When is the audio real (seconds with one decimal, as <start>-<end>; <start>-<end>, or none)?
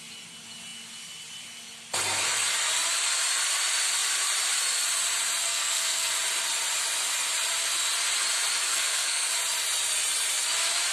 0.0-5.4; 6.1-8.7; 9.3-10.9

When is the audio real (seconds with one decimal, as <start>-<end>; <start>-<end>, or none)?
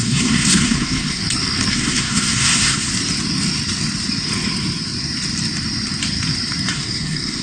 1.2-1.7; 2.9-6.7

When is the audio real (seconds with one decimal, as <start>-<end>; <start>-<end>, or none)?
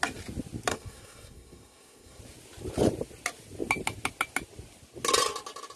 0.0-0.7; 2.2-5.8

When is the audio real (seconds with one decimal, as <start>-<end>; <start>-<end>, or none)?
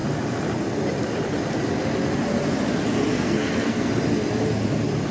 0.0-3.1; 3.9-5.1